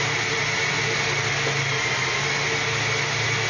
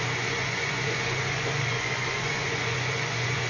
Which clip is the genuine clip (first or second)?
first